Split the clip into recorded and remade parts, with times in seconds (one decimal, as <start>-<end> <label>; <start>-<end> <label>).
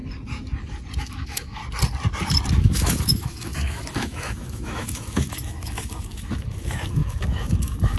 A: 0.0-1.0 recorded; 1.0-1.6 remade; 1.6-2.5 recorded; 2.5-8.0 remade